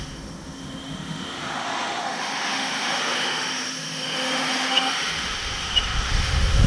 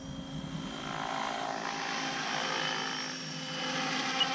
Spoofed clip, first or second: first